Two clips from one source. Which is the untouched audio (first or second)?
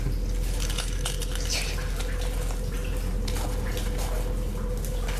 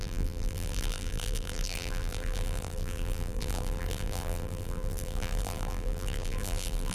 first